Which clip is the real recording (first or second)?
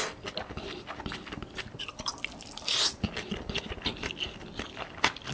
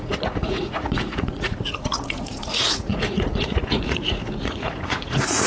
first